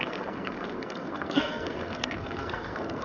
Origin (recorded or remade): remade